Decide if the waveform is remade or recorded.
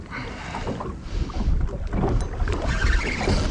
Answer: recorded